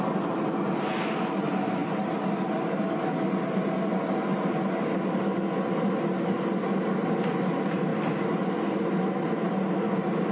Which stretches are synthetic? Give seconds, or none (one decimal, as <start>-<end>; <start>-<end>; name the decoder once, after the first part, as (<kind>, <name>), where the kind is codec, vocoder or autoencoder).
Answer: none

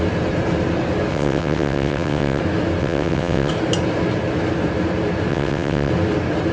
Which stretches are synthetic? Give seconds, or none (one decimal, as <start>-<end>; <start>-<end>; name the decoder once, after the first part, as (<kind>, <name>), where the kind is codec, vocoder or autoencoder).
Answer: 1.1-2.4 (vocoder, WaveNeXt); 2.8-3.5; 5.3-5.9

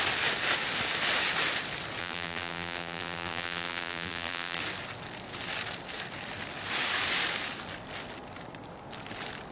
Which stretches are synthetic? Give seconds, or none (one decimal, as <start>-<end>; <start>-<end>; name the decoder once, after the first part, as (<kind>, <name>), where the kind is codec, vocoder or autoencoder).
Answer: 2.0-4.6 (vocoder, BigVGAN v2)

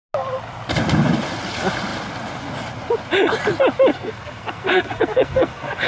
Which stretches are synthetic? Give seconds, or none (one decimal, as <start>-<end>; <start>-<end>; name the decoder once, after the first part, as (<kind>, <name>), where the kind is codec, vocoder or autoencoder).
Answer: 3.9-5.9 (codec, SNAC)